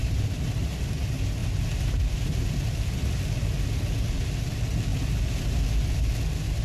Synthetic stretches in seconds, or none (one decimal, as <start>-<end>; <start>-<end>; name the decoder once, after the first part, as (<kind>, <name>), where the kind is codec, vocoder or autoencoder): 0.0-0.8 (vocoder, BigVGAN v2)

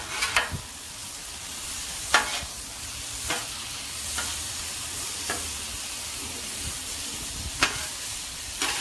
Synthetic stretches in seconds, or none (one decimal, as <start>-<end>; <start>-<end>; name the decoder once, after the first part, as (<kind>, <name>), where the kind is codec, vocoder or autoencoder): 0.0-1.0 (vocoder, BigVGAN v2); 1.7-8.8

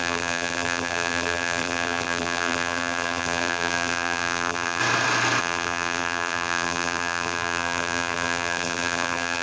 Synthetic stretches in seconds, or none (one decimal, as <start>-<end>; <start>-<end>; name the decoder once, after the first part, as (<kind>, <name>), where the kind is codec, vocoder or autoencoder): 0.0-4.8 (vocoder, BigVGAN v2); 5.4-9.4